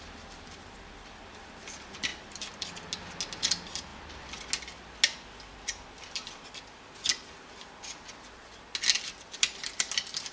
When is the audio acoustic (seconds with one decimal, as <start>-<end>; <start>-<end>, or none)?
0.0-2.1; 2.7-10.3